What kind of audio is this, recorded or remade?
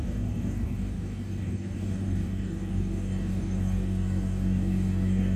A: remade